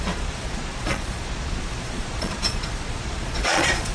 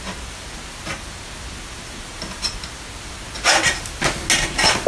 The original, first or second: second